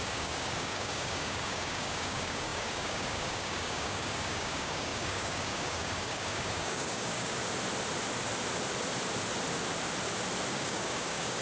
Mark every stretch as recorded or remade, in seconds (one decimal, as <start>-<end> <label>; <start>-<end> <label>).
0.0-7.4 remade; 7.4-10.5 recorded; 10.5-11.4 remade